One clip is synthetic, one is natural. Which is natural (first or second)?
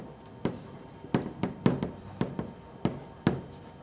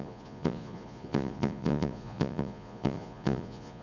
first